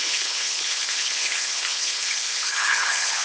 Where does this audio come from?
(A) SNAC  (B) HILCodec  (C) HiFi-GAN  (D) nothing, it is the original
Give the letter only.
B